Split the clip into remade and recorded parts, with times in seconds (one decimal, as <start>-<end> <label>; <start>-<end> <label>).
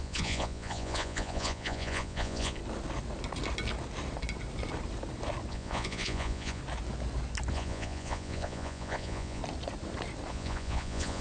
0.0-2.6 remade; 2.6-5.5 recorded; 5.5-6.6 remade; 6.6-7.5 recorded; 7.5-9.4 remade; 9.4-10.3 recorded; 10.3-11.2 remade